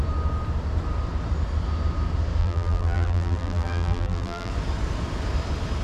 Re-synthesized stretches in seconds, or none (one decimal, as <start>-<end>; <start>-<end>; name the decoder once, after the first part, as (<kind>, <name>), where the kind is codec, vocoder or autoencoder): 2.4-4.5 (vocoder, BigVGAN v2)